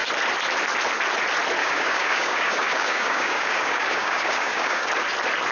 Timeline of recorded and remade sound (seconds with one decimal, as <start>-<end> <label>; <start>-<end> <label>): 0.0-1.6 recorded; 1.6-4.9 remade; 4.9-5.5 recorded